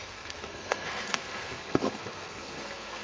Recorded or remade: remade